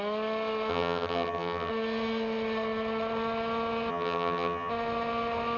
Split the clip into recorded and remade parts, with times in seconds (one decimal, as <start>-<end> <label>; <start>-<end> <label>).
0.0-0.7 recorded; 0.7-1.7 remade; 1.7-3.9 recorded; 3.9-4.7 remade; 4.7-5.6 recorded